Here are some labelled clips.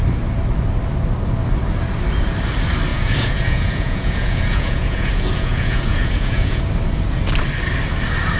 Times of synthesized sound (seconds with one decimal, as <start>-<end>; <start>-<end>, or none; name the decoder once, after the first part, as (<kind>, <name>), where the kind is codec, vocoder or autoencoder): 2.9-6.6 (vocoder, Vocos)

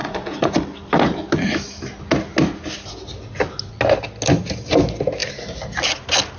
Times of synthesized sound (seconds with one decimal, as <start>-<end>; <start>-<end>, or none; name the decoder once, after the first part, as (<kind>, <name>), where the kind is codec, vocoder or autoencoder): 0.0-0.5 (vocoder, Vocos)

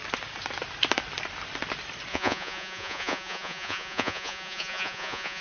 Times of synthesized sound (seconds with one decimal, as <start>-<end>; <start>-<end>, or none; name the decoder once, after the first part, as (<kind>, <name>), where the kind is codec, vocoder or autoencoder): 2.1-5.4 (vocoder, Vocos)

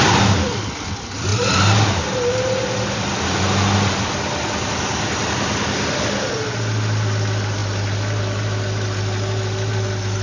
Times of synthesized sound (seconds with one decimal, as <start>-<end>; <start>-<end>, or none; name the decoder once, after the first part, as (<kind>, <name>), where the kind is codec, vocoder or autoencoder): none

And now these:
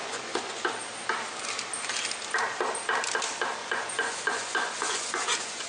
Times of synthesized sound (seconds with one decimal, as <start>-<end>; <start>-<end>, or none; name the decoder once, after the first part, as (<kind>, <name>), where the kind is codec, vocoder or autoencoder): 0.0-0.6 (vocoder, Vocos); 3.6-5.7

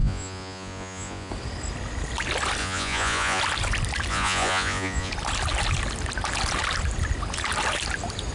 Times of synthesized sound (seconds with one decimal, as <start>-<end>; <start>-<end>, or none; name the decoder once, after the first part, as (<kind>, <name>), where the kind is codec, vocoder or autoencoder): 0.0-1.3 (vocoder, Vocos); 2.6-3.4; 4.1-5.1